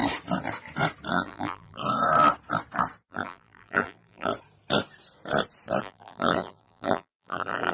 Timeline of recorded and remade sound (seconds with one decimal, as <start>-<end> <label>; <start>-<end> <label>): 0.0-1.1 recorded; 1.1-1.8 remade; 1.8-3.1 recorded; 3.1-4.3 remade; 4.3-5.8 recorded; 5.8-7.7 remade